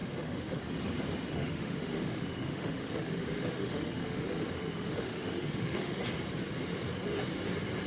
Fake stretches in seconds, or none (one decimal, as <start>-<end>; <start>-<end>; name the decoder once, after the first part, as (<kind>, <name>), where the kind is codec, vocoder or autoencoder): 0.0-0.6 (autoencoder, DAC-VAE); 1.3-6.0